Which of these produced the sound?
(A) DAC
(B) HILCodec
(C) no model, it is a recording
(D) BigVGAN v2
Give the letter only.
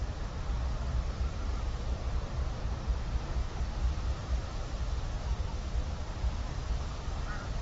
D